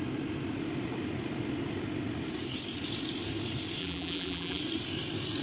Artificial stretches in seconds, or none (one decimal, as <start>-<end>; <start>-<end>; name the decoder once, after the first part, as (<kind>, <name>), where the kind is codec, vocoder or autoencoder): 3.8-4.6 (vocoder, BigVGAN v2)